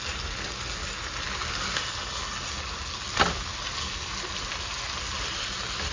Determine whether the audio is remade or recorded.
recorded